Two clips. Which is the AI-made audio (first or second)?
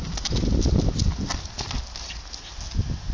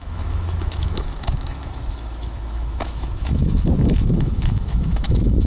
second